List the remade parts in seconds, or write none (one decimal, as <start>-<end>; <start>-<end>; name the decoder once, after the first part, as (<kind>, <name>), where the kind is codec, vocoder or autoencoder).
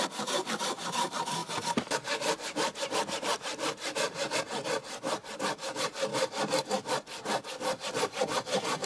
0.0-6.1 (vocoder, BigVGAN v2); 7.9-8.9